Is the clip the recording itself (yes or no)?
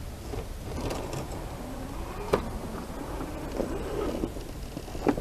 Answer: yes